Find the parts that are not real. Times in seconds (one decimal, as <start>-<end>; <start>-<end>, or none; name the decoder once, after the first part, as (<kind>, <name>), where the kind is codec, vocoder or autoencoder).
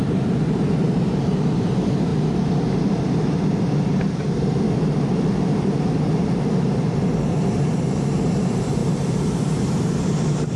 0.0-2.1 (vocoder, BigVGAN v2); 5.2-10.6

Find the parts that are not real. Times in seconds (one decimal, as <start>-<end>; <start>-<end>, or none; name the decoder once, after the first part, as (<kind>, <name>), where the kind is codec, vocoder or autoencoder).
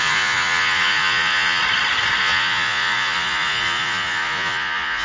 0.0-1.6 (vocoder, Vocos); 2.2-5.0